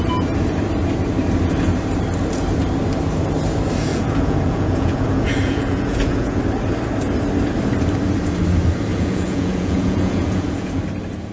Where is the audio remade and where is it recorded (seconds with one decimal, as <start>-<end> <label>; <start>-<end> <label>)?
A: 0.0-3.9 recorded; 3.9-6.4 remade; 6.4-8.9 recorded; 8.9-10.8 remade; 10.8-11.3 recorded